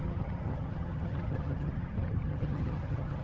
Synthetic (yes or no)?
yes